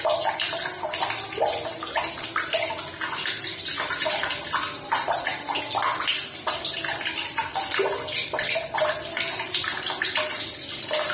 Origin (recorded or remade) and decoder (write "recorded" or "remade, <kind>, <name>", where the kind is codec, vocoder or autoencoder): recorded